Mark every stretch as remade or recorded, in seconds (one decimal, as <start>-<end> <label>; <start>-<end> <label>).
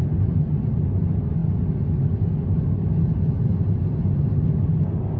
0.0-5.2 recorded